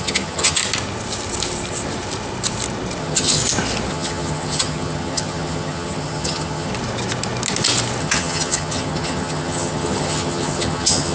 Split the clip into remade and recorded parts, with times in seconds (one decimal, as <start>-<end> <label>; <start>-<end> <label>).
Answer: 0.0-0.6 remade; 0.6-3.0 recorded; 3.0-3.4 remade; 3.4-3.9 recorded; 3.9-6.7 remade; 6.7-8.0 recorded; 8.0-11.1 remade